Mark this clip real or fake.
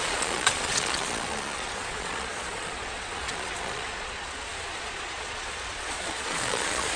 fake